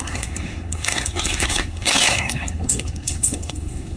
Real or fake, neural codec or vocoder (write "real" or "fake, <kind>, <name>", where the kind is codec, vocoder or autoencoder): fake, codec, SNAC